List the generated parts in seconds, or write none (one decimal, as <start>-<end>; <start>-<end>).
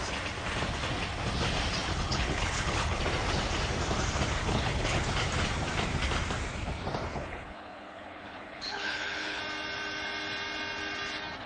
1.9-3.0; 4.4-5.0; 7.1-9.4